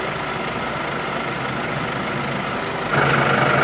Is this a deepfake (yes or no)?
no